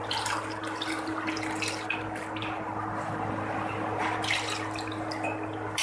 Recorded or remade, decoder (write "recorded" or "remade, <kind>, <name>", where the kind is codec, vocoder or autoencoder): remade, vocoder, BigVGAN v2